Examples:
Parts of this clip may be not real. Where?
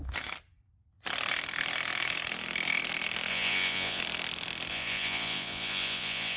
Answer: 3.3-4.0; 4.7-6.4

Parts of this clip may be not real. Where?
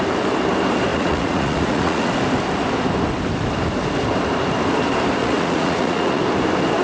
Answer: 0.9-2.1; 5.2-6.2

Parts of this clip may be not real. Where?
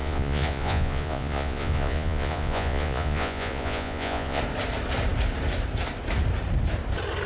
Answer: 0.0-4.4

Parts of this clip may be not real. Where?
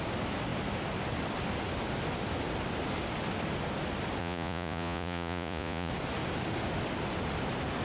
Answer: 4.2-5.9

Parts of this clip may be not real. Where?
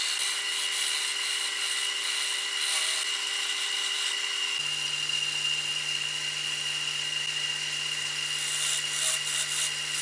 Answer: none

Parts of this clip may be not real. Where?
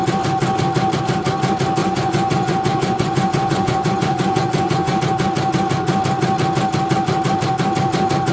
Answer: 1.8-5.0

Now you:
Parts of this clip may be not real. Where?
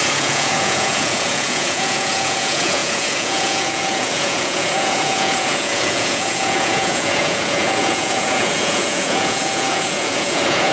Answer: 0.0-10.7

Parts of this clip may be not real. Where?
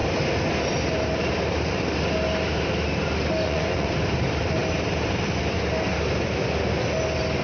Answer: 3.4-3.9